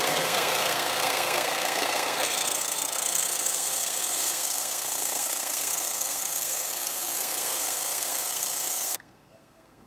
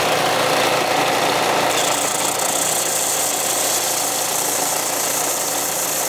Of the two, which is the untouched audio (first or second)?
second